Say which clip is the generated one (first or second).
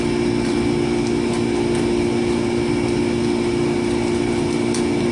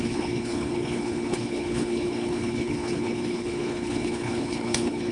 second